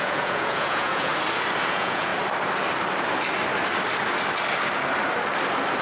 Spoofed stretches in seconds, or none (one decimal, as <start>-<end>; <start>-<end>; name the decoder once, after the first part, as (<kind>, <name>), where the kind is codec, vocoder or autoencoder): 0.0-1.1 (vocoder, Vocos); 1.7-2.1